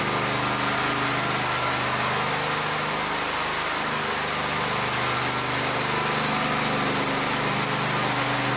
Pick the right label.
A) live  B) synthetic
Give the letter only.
A